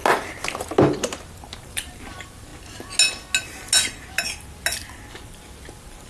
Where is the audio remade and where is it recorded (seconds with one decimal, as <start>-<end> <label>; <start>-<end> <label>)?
0.0-1.6 recorded; 1.6-2.5 remade; 2.5-5.1 recorded; 5.1-6.1 remade